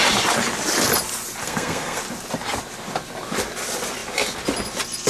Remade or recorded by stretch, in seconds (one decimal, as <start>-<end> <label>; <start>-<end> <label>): 0.0-1.4 recorded; 1.4-2.0 remade; 2.0-5.1 recorded